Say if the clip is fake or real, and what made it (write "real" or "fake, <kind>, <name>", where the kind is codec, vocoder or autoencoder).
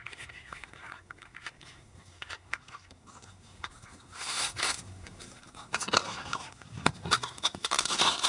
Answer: fake, codec, SNAC